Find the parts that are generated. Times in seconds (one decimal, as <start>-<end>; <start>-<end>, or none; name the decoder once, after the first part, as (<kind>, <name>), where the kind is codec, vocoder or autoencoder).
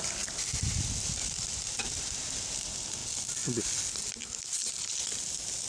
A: none